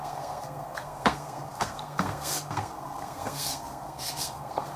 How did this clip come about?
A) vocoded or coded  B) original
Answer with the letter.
A